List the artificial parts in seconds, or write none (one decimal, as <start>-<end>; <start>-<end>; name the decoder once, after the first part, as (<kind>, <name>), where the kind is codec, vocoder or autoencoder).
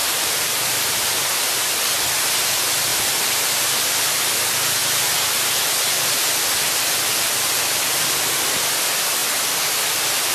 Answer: 0.0-1.5 (vocoder, BigVGAN v2); 2.9-4.2